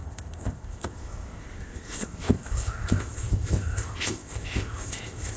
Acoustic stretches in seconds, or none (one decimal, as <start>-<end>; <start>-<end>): none